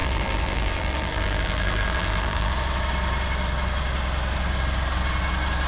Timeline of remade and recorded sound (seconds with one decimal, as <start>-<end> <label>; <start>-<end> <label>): 0.0-2.5 remade; 2.5-5.7 recorded